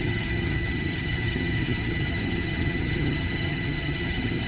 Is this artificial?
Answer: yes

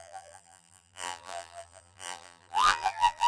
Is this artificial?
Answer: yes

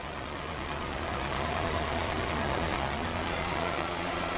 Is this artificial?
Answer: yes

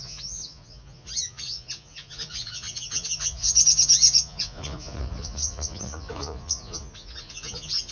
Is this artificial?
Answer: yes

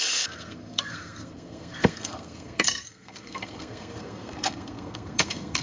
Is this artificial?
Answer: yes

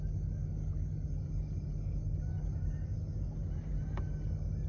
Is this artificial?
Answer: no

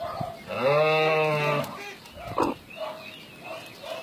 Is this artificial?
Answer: no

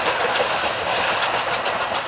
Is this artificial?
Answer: no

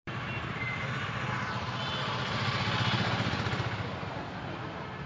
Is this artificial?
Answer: no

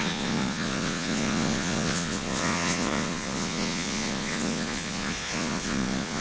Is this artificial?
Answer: yes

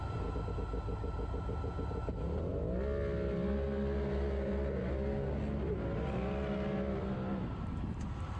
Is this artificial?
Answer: no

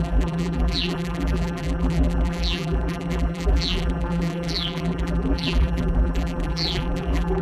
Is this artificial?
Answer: yes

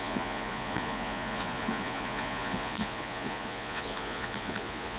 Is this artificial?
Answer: yes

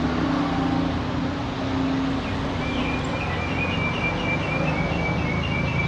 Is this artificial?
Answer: no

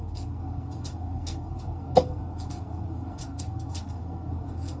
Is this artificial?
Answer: yes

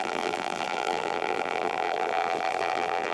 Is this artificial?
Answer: yes